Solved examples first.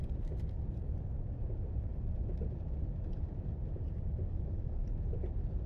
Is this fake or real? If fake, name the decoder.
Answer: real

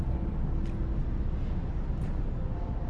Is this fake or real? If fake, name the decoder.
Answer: real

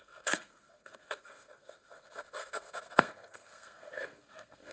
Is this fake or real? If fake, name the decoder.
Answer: fake, codec, SNAC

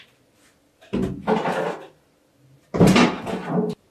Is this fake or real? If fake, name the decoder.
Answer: real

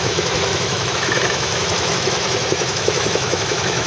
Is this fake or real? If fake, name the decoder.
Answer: fake, autoencoder, DAC-VAE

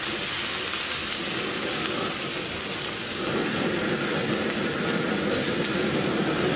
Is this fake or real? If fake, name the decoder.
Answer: real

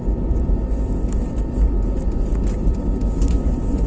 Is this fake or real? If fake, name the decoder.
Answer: fake, vocoder, BigVGAN v2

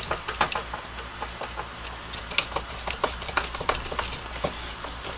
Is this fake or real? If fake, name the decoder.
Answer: real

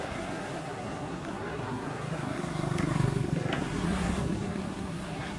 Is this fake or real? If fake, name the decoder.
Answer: fake, codec, SNAC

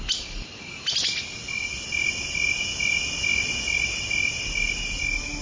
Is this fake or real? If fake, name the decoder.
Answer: real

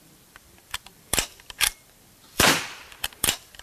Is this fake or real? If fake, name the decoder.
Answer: fake, vocoder, BigVGAN v2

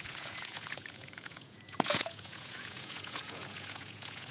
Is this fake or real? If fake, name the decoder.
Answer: fake, vocoder, Vocos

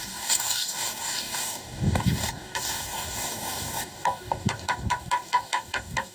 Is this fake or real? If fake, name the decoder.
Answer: fake, codec, DAC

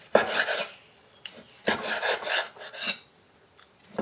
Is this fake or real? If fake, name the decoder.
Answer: real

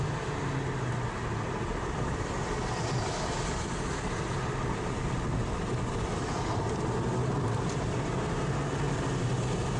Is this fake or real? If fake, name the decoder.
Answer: real